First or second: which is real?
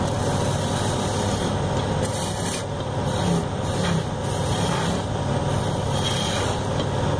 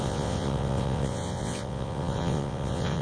first